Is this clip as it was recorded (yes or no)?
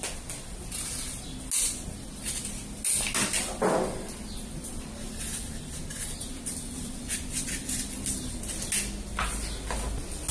yes